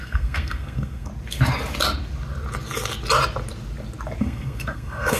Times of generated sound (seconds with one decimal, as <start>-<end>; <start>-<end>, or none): 0.0-1.1; 4.2-5.2